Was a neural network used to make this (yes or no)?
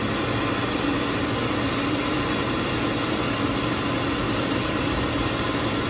no